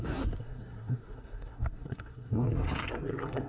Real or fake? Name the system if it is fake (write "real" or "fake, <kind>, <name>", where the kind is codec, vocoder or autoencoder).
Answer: fake, codec, SNAC